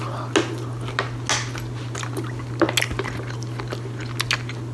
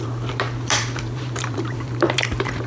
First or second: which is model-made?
second